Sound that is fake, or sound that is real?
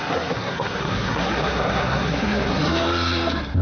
fake